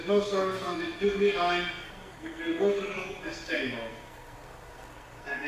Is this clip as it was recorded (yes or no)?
no